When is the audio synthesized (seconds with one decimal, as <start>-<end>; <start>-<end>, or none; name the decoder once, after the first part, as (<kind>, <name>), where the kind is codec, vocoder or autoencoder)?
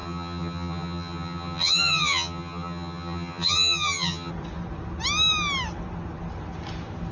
0.0-4.3 (vocoder, HiFi-GAN)